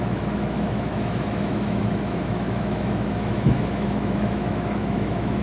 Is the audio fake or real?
fake